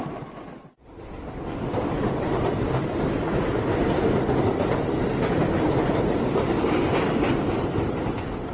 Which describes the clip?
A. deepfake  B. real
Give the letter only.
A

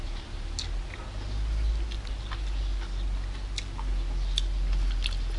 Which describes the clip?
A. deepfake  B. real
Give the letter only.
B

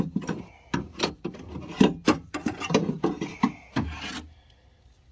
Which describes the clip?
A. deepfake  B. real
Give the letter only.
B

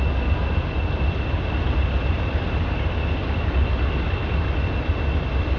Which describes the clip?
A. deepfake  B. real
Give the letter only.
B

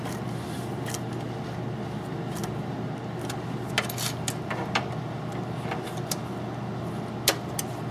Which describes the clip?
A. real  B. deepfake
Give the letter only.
A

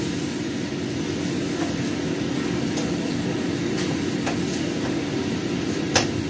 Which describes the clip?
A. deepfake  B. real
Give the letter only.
A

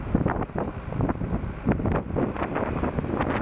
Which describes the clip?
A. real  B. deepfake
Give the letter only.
A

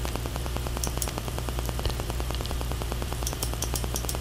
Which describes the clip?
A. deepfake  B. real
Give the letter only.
A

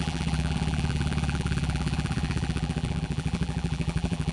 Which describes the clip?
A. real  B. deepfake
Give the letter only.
B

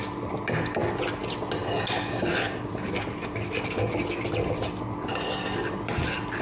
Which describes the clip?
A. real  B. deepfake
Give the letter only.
A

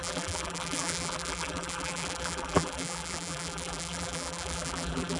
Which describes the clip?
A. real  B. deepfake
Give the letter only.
B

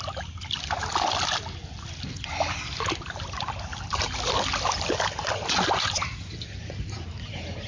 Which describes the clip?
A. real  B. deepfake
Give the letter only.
A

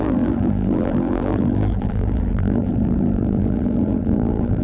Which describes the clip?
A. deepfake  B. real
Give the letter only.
A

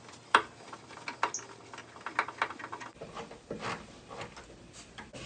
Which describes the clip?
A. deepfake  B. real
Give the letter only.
B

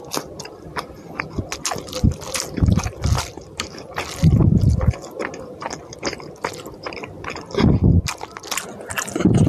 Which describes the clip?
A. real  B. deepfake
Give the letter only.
A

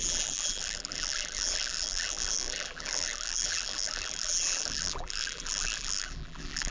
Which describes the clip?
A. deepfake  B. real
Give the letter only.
A